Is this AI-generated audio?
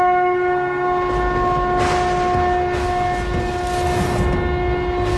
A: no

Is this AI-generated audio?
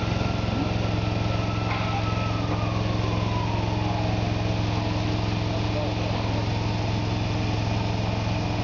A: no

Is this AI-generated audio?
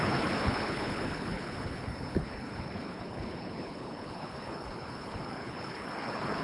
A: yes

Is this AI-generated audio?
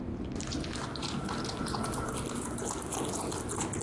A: no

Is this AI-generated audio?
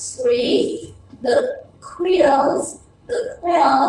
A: yes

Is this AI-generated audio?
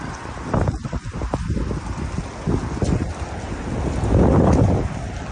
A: no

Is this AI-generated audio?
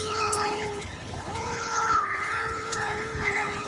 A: yes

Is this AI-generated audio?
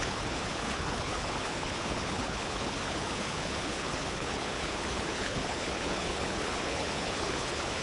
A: yes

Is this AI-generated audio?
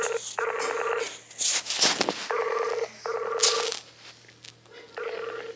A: no